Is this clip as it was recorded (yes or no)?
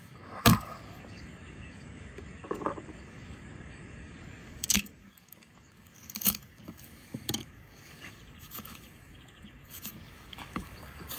no